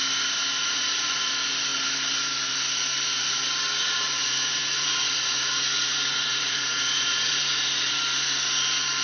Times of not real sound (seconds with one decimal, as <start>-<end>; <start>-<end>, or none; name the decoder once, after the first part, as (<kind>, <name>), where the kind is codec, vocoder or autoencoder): 0.6-1.2 (vocoder, Vocos); 3.8-8.0